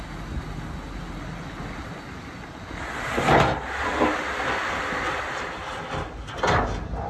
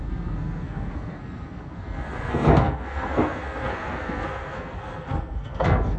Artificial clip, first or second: second